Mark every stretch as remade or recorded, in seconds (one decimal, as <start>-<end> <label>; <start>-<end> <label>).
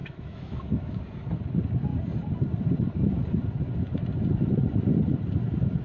0.0-1.0 remade; 1.0-5.8 recorded